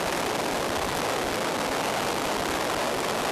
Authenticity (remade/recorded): recorded